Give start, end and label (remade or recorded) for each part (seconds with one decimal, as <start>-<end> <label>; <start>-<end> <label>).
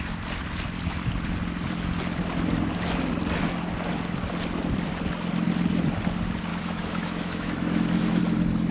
0.0-6.5 recorded; 6.5-8.2 remade; 8.2-8.7 recorded